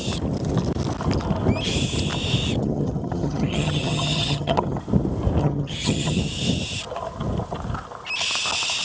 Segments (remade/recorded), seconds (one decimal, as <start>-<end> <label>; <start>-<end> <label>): 0.0-2.6 recorded; 2.6-4.8 remade; 4.8-5.4 recorded; 5.4-6.2 remade; 6.2-8.8 recorded